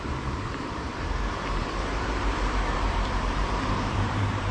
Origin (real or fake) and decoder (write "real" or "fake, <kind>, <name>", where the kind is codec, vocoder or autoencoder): fake, vocoder, BigVGAN v2